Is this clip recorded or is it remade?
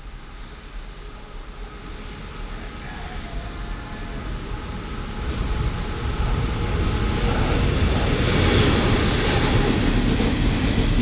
recorded